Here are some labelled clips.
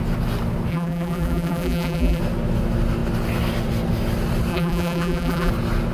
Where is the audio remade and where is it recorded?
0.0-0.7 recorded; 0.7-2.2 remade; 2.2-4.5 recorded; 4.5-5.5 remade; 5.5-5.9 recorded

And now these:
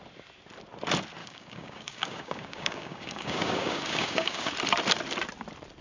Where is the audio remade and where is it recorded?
0.0-1.2 recorded; 1.2-4.5 remade; 4.5-5.8 recorded

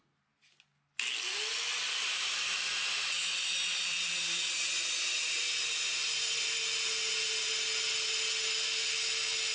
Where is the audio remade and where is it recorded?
0.0-9.5 recorded

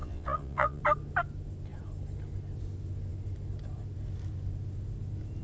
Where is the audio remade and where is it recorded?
0.0-0.8 remade; 0.8-5.4 recorded

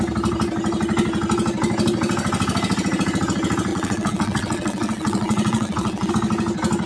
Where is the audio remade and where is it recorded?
0.0-3.7 recorded; 3.7-6.1 remade; 6.1-6.9 recorded

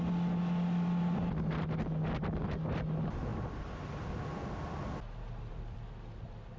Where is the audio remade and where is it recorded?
0.0-6.6 recorded